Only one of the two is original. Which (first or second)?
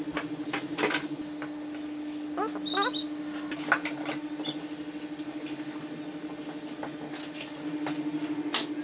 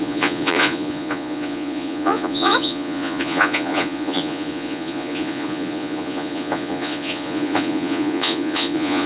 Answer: first